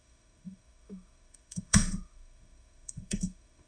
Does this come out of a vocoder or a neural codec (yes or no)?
yes